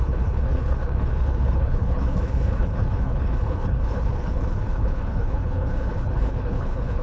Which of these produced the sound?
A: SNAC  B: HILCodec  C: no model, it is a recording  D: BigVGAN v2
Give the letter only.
B